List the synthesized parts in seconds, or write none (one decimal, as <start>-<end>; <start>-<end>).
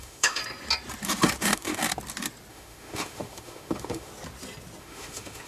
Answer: 0.0-0.4; 1.4-1.8; 2.5-4.1; 4.8-5.5